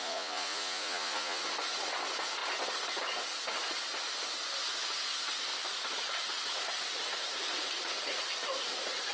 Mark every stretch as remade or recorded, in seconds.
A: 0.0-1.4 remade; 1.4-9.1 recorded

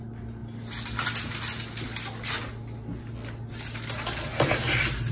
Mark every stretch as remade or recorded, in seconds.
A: 0.0-5.1 recorded